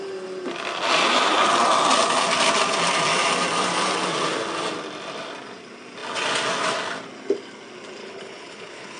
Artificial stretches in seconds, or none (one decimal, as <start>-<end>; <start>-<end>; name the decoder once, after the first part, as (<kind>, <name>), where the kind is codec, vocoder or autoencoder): 8.0-9.0 (codec, HILCodec)